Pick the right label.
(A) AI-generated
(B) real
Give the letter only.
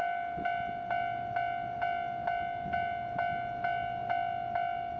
B